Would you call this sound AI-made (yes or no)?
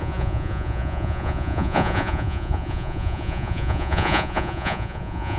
yes